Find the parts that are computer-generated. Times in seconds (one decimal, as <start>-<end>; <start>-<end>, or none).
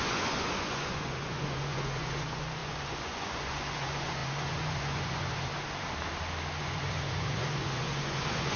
0.0-5.5; 6.6-8.6